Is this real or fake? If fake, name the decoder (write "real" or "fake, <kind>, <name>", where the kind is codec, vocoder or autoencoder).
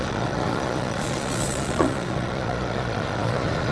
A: fake, vocoder, Vocos